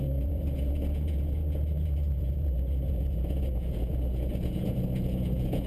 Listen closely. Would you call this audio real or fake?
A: fake